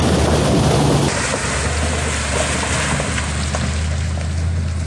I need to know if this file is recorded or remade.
recorded